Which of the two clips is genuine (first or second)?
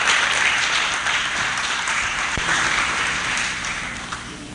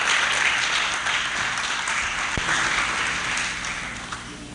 second